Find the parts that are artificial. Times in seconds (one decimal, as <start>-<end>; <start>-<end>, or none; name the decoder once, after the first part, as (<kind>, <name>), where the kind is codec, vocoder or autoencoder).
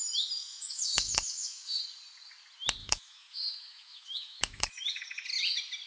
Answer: 0.4-1.8 (autoencoder, DAC-VAE); 2.8-5.0